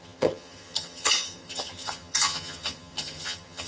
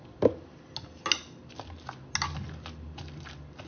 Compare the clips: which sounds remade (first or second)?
first